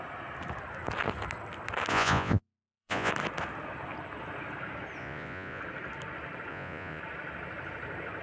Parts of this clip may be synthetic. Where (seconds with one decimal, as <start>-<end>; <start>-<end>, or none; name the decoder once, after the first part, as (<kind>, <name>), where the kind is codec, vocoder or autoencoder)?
1.9-3.1 (vocoder, Vocos); 5.0-5.6; 6.5-7.0